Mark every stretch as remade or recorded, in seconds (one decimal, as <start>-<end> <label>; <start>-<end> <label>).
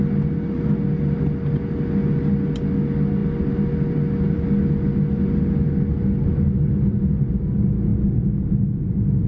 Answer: 0.0-9.3 recorded